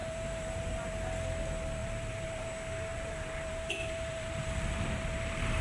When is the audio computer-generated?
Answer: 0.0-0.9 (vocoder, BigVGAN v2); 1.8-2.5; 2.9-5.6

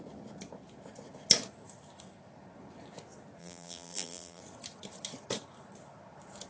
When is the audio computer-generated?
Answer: 3.4-4.4 (vocoder, BigVGAN v2)

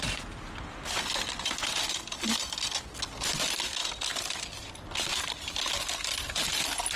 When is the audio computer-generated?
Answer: 3.8-5.7 (vocoder, BigVGAN v2)

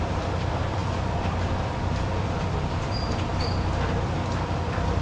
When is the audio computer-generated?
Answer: 0.0-5.0 (vocoder, BigVGAN v2)

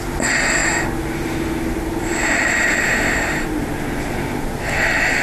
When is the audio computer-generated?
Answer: none